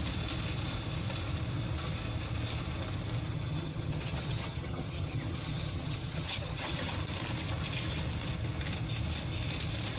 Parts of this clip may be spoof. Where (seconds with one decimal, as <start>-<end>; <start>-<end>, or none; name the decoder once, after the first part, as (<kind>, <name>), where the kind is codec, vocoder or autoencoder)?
3.3-6.9 (vocoder, HiFi-GAN)